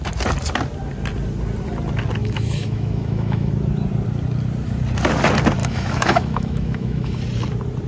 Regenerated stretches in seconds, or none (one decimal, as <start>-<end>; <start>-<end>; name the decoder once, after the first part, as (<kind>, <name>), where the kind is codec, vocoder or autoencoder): 2.2-3.5 (autoencoder, DAC-VAE); 5.6-7.2